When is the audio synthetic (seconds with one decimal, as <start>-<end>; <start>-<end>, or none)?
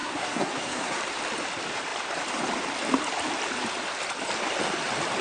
0.0-1.0